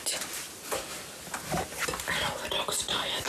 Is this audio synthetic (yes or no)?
no